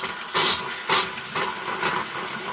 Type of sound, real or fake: real